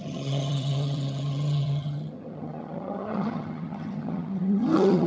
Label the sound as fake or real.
fake